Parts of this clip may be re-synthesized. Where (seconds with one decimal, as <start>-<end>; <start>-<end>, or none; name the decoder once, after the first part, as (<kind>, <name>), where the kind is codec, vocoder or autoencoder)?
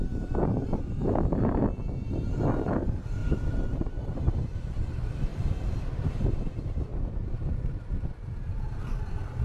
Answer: 3.2-4.3 (vocoder, BigVGAN v2); 6.9-7.7